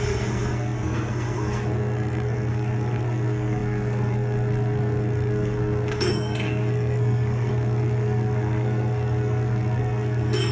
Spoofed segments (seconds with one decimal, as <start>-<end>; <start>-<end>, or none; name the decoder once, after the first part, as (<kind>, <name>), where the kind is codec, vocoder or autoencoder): 0.0-10.5 (codec, SNAC)